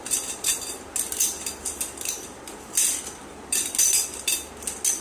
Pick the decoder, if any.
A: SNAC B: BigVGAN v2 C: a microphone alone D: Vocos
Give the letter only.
C